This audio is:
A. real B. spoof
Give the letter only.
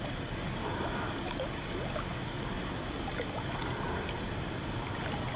A